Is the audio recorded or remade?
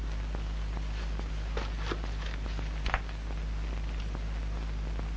recorded